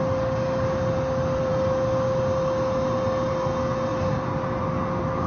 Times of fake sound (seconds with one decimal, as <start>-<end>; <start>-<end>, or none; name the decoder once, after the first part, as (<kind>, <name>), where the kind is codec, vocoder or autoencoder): none